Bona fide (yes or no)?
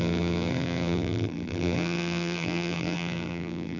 no